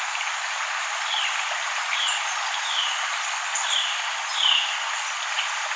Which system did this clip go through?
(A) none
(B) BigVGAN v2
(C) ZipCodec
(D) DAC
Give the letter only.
A